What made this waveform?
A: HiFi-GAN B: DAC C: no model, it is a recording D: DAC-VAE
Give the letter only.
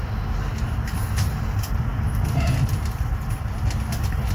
C